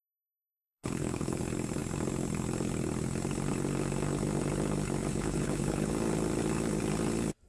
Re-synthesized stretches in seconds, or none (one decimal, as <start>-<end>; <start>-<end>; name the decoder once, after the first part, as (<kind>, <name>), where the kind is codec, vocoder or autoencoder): 0.0-1.4 (codec, HILCodec); 5.0-5.9